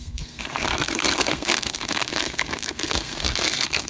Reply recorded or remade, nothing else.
remade